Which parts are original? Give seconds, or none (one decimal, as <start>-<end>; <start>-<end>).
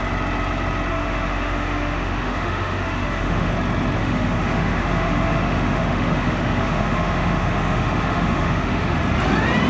0.0-0.9; 3.5-4.0; 9.0-9.7